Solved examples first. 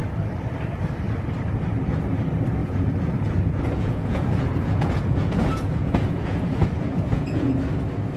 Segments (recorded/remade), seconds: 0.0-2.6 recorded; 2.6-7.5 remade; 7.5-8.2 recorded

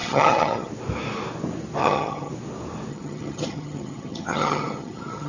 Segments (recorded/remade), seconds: 0.0-0.7 remade; 0.7-1.8 recorded; 1.8-2.3 remade; 2.3-2.9 recorded; 2.9-5.3 remade

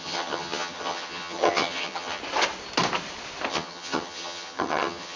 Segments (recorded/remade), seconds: 0.0-2.2 remade; 2.2-3.5 recorded; 3.5-5.2 remade

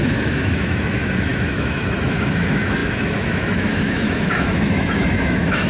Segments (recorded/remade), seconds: 0.0-5.7 remade

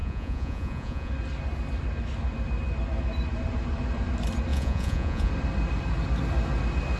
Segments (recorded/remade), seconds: 0.0-1.1 remade; 1.1-4.5 recorded; 4.5-5.3 remade; 5.3-7.0 recorded

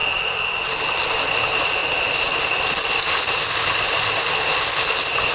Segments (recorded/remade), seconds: 0.0-5.3 recorded